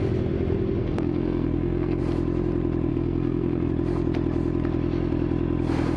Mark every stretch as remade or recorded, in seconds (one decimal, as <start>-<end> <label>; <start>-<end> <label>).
0.0-0.8 recorded; 0.8-2.0 remade; 2.0-2.9 recorded; 2.9-3.7 remade; 3.7-6.0 recorded

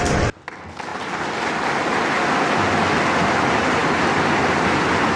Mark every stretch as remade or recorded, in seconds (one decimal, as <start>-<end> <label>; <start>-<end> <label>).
0.0-5.2 recorded

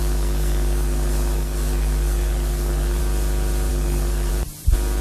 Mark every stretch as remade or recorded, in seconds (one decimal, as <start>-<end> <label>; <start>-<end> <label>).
0.0-3.0 remade; 3.0-3.7 recorded; 3.7-4.3 remade; 4.3-5.0 recorded

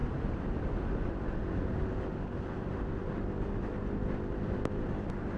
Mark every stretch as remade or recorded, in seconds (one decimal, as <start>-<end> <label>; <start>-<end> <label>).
0.0-5.4 recorded

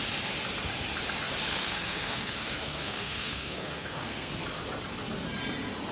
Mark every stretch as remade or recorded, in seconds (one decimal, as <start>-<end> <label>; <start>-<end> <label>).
0.0-1.5 recorded; 1.5-4.3 remade; 4.3-5.9 recorded